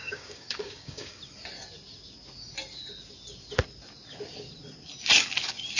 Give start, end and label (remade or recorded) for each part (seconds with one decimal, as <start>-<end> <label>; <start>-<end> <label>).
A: 0.0-1.2 remade; 1.2-5.8 recorded

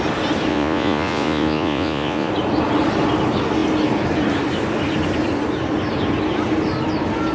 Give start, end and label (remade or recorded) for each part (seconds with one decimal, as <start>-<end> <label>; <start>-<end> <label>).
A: 0.0-0.5 recorded; 0.5-2.3 remade; 2.3-7.3 recorded

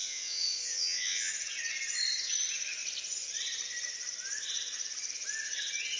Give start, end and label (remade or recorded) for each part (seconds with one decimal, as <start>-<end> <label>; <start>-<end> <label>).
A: 0.0-1.3 remade; 1.3-6.0 recorded

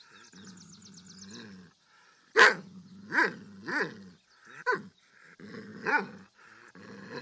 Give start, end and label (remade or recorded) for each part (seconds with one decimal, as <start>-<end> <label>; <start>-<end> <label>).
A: 0.0-7.2 recorded

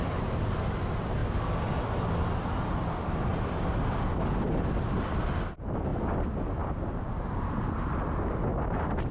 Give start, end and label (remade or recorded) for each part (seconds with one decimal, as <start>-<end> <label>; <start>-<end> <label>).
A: 0.0-9.1 recorded

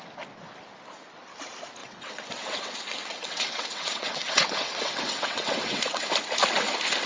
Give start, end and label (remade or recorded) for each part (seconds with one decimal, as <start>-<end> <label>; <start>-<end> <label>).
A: 0.0-1.8 recorded; 1.8-6.1 remade; 6.1-7.1 recorded

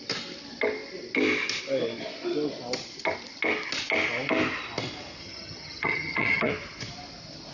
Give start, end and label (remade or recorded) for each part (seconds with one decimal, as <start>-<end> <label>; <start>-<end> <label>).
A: 0.0-5.2 recorded; 5.2-6.5 remade; 6.5-7.5 recorded

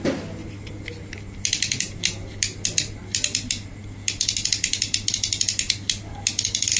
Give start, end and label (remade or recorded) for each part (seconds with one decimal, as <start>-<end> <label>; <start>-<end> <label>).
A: 0.0-6.8 recorded